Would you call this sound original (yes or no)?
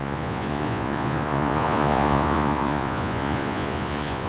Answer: no